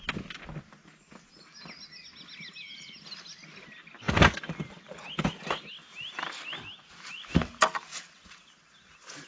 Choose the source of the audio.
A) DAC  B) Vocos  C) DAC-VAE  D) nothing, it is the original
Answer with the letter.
D